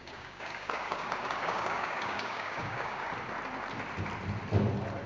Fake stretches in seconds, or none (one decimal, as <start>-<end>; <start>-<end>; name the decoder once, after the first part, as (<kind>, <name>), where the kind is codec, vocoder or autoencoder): 0.0-3.1 (codec, DAC)